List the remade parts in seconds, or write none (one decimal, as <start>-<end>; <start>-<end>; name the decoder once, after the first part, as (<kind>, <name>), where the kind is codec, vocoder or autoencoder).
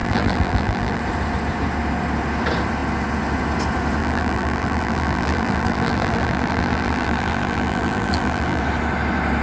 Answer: 0.0-1.0 (vocoder, BigVGAN v2); 4.0-8.6